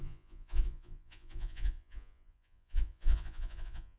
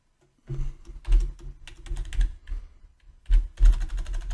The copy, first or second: first